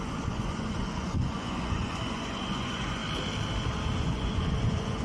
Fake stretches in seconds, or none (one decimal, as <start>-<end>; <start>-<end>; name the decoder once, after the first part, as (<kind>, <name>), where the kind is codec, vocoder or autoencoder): 0.0-3.0 (vocoder, Vocos); 4.0-5.0